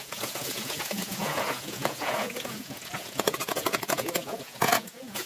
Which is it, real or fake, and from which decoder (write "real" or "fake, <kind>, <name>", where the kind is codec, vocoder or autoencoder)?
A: fake, vocoder, Vocos